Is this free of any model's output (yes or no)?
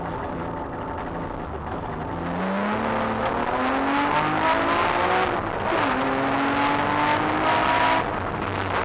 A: yes